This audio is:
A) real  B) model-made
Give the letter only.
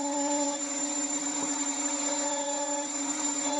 B